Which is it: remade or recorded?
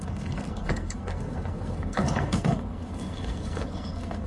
remade